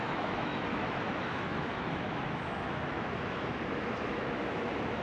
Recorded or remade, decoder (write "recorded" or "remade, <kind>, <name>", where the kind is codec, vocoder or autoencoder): remade, autoencoder, DAC-VAE